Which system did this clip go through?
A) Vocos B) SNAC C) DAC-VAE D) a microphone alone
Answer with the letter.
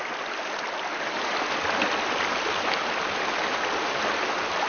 D